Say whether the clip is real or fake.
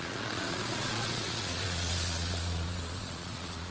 fake